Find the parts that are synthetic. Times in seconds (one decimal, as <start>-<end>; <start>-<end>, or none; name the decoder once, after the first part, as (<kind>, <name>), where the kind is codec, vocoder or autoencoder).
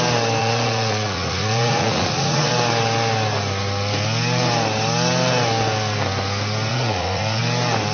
0.4-2.5 (vocoder, Vocos); 6.7-7.4